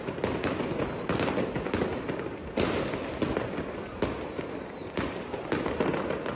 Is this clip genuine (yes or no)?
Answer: yes